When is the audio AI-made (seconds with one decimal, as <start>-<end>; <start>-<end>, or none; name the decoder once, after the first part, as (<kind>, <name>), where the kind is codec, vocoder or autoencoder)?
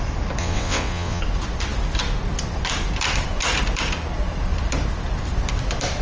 0.4-1.2 (vocoder, WaveNeXt)